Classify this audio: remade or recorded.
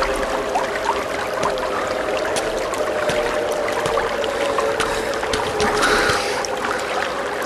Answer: recorded